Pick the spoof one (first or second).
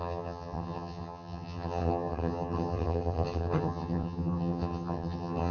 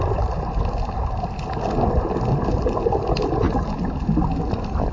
first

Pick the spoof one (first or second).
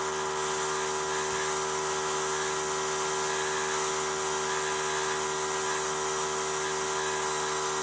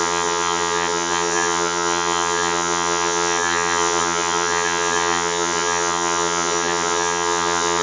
second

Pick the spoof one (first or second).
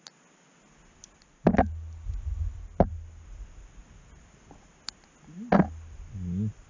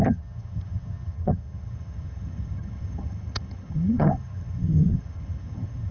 second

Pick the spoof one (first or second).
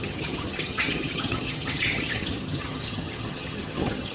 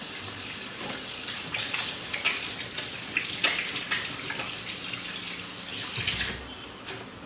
first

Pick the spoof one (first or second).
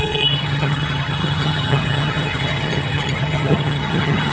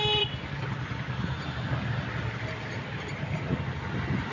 first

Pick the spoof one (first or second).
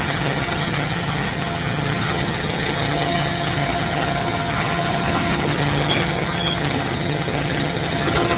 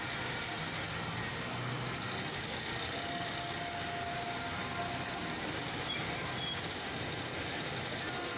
first